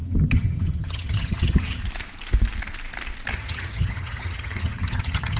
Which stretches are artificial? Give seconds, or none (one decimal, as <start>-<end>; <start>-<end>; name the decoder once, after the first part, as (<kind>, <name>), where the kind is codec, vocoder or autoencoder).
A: 0.0-1.8 (vocoder, HiFi-GAN); 3.3-5.4